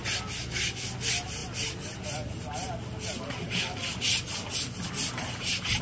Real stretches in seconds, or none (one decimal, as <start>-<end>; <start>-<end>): 0.0-5.8